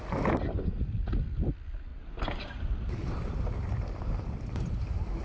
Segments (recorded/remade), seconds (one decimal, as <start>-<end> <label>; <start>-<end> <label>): 0.0-1.9 recorded; 1.9-5.2 remade